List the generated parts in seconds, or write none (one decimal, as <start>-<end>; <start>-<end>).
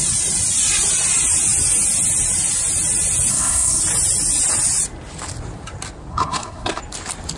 3.3-3.8; 6.1-6.8